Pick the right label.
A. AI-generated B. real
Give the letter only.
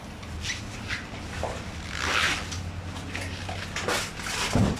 B